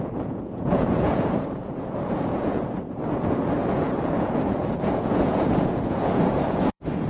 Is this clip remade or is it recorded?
remade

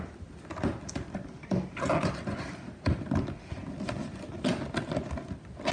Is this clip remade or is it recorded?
recorded